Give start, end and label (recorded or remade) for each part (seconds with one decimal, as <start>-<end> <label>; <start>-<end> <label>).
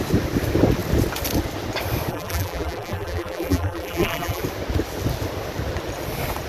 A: 0.0-2.1 recorded; 2.1-4.4 remade; 4.4-6.5 recorded